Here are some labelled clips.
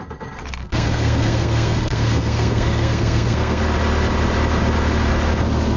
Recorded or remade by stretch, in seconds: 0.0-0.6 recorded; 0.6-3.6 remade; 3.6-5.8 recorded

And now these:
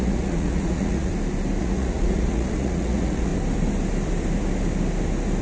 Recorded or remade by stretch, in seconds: 0.0-1.1 remade; 1.1-1.6 recorded; 1.6-3.3 remade; 3.3-5.4 recorded

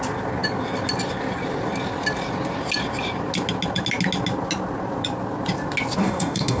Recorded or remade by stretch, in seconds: 0.0-6.0 recorded; 6.0-6.6 remade

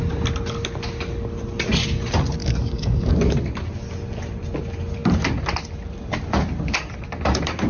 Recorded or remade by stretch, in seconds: 0.0-2.4 recorded; 2.4-3.1 remade; 3.1-7.7 recorded

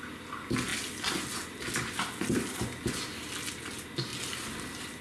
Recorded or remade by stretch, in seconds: 0.0-5.0 recorded